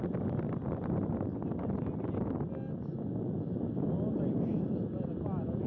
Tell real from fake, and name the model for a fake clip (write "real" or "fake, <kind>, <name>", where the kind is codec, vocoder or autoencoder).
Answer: real